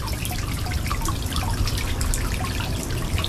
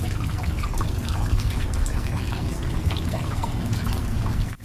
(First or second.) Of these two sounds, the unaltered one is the first